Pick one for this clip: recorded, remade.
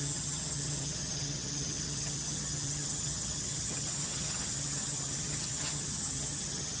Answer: remade